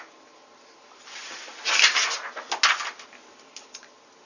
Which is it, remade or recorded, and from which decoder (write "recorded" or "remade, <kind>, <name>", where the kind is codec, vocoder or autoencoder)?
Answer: recorded